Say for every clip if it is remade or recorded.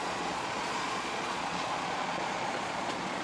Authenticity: remade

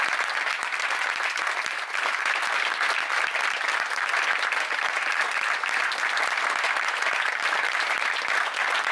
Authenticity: recorded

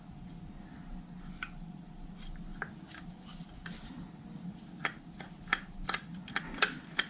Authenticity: recorded